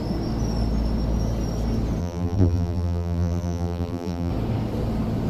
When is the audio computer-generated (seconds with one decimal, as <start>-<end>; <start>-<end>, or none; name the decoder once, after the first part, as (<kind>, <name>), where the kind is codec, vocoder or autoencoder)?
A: 2.0-4.3 (vocoder, BigVGAN v2)